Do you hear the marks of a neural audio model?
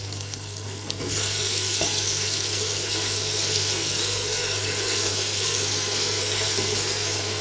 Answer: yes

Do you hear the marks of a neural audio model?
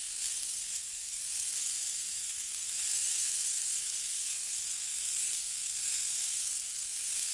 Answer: yes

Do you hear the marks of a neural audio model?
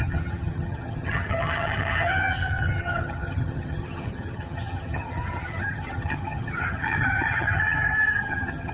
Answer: yes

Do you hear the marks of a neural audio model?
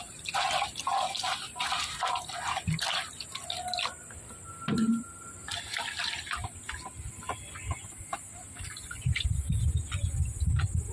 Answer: no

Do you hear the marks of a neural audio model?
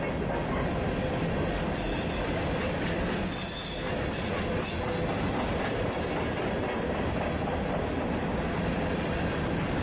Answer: no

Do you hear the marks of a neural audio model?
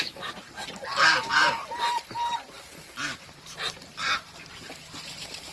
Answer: yes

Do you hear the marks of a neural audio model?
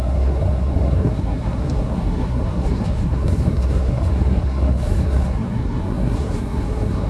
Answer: yes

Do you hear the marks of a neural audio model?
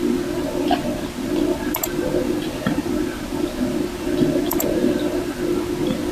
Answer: no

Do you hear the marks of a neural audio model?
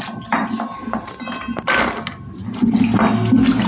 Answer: no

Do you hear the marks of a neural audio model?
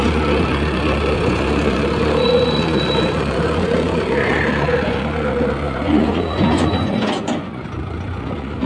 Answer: yes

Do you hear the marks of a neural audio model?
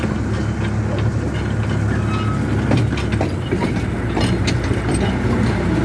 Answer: no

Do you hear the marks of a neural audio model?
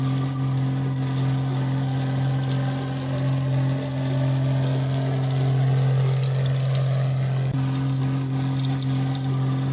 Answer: no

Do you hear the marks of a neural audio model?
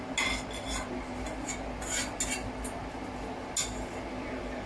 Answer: no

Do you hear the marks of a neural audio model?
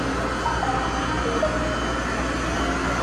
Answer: no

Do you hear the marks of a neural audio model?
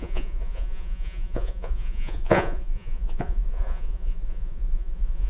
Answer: yes